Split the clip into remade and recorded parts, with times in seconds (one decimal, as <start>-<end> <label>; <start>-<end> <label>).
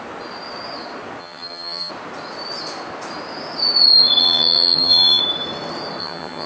0.0-1.2 recorded; 1.2-1.9 remade; 1.9-4.2 recorded; 4.2-5.2 remade; 5.2-6.0 recorded; 6.0-6.5 remade